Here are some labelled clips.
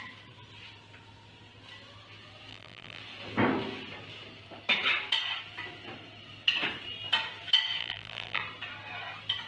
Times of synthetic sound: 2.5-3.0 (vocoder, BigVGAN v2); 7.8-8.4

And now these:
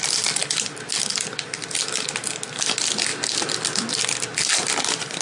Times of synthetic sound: none

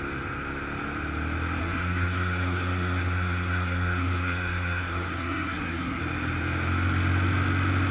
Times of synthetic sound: 1.6-6.0 (codec, SNAC)

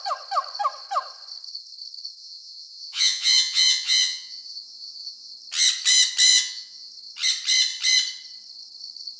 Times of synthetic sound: 2.2-5.3 (vocoder, Vocos); 6.3-6.9

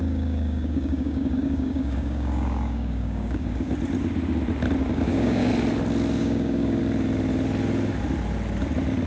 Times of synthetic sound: 0.0-3.7 (codec, DAC); 4.9-5.5; 6.2-6.8

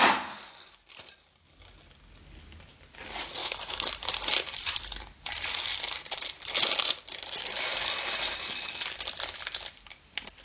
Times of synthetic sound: 3.4-3.9 (autoencoder, DAC-VAE)